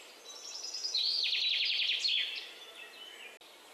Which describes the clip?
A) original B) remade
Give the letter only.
A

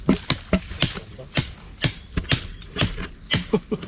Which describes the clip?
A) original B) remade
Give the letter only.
A